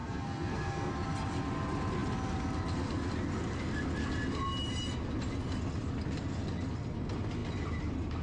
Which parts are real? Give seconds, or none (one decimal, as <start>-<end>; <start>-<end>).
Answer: 0.9-8.2